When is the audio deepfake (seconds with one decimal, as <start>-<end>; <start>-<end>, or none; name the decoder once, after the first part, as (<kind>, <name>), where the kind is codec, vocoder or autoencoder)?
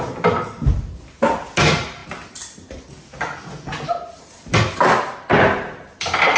none